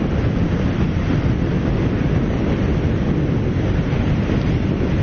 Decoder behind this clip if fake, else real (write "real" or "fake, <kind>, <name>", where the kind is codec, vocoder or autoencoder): real